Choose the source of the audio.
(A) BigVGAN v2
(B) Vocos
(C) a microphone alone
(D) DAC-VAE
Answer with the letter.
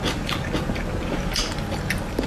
C